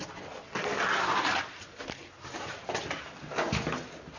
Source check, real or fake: real